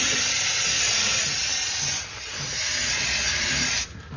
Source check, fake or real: real